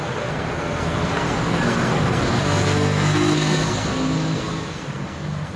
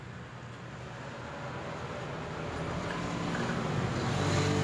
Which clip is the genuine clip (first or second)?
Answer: second